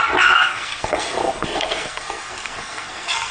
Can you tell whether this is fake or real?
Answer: fake